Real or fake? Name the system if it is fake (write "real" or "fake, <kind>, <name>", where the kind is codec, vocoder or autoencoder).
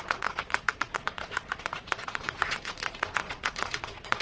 fake, vocoder, Vocos